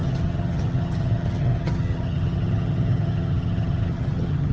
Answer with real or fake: fake